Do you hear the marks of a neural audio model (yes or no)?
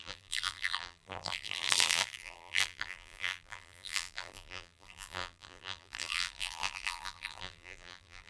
yes